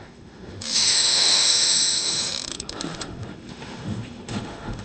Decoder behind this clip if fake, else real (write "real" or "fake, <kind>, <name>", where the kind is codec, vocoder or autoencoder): fake, autoencoder, DAC-VAE